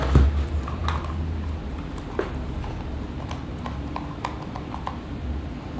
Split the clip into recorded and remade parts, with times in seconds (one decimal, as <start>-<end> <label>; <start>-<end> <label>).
0.0-5.8 recorded

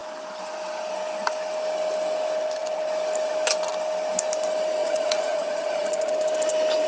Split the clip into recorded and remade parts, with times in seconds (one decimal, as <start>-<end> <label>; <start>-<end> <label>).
0.0-4.8 recorded; 4.8-6.1 remade; 6.1-6.9 recorded

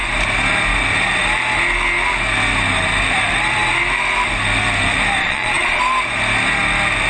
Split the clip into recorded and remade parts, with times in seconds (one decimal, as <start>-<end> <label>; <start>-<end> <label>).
0.0-5.2 recorded; 5.2-5.8 remade; 5.8-7.1 recorded

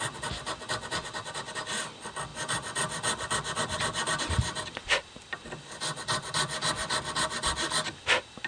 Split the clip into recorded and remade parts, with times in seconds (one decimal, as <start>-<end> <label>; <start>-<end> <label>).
0.0-8.5 recorded

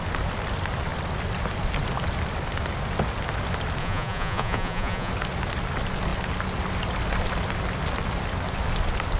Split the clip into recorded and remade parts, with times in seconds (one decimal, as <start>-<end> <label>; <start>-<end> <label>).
0.0-3.8 recorded; 3.8-5.1 remade; 5.1-9.2 recorded

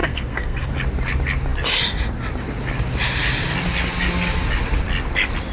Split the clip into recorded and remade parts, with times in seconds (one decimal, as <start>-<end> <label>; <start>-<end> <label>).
0.0-0.7 remade; 0.7-5.5 recorded

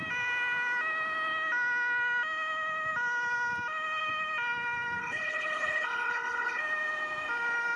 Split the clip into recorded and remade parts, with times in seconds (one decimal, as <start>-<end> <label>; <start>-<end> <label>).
0.0-5.0 recorded; 5.0-6.6 remade; 6.6-7.8 recorded